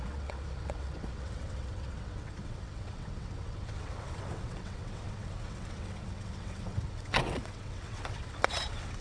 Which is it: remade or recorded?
remade